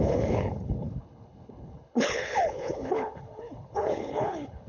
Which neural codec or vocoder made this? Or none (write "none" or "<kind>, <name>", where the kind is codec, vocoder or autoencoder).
codec, HILCodec